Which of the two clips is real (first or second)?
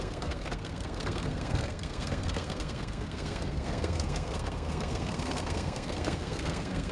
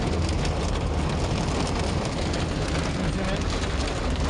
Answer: second